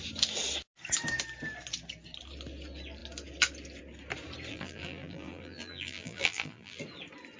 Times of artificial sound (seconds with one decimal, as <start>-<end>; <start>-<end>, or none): 4.5-6.8